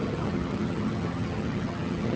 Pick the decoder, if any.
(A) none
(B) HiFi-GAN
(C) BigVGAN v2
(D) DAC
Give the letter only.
B